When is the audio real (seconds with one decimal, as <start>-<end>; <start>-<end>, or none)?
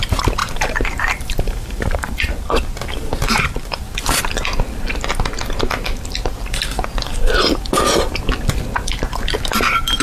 0.0-0.4; 3.9-10.0